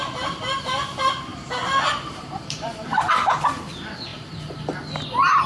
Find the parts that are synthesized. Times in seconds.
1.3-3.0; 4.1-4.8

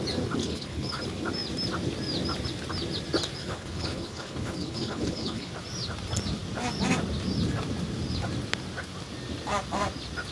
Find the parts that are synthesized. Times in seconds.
0.4-1.0; 3.4-5.5

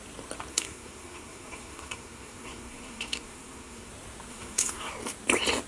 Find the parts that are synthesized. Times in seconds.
0.5-3.9; 4.3-4.9

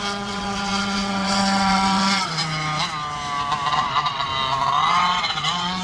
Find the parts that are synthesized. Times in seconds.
0.0-2.4; 3.7-4.3; 4.9-5.8

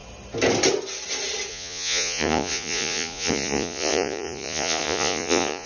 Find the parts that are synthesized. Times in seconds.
1.5-5.7